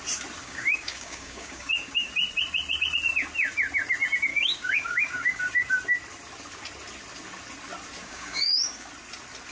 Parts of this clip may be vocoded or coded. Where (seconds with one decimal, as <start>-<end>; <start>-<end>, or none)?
0.4-2.1; 4.3-5.4; 8.0-8.9